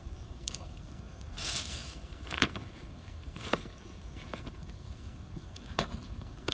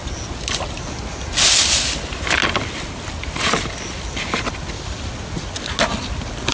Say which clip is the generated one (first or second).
first